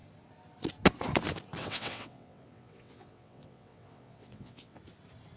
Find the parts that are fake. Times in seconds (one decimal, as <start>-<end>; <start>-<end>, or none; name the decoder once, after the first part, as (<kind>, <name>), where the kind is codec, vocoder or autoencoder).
1.6-4.8 (vocoder, WaveNeXt)